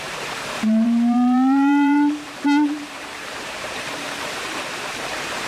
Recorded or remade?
remade